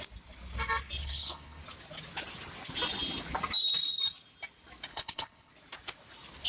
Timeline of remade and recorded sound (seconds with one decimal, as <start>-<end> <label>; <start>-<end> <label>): 0.0-1.0 recorded; 1.0-1.6 remade; 1.6-4.9 recorded; 4.9-5.5 remade; 5.5-6.5 recorded